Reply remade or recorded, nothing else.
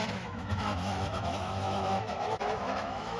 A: remade